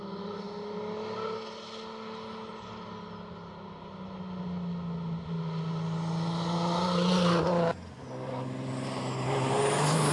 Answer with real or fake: real